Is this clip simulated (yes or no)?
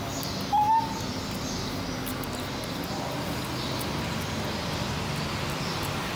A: no